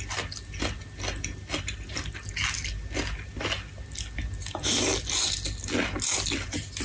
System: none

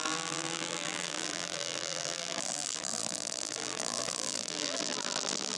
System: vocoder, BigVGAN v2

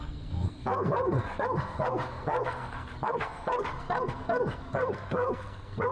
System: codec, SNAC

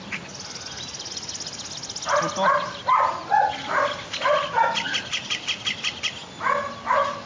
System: none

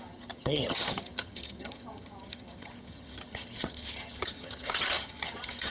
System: vocoder, HiFi-GAN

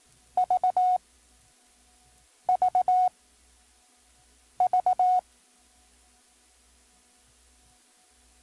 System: none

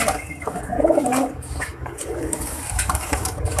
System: codec, DAC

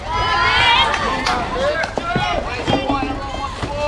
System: none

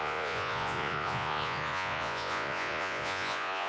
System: vocoder, Vocos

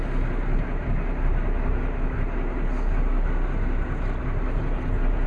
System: none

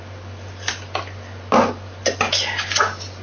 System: none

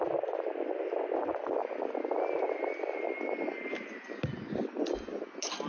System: none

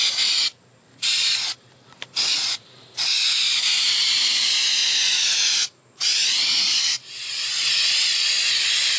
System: none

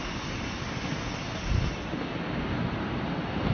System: none